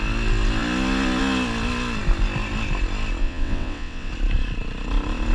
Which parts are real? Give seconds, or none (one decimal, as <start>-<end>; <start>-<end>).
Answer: 0.0-3.2; 4.1-5.3